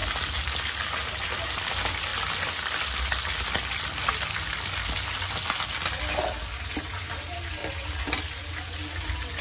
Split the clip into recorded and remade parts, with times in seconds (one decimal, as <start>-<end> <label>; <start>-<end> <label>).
0.0-9.4 recorded